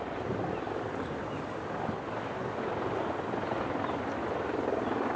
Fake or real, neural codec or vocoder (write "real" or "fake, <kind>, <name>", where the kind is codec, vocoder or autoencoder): real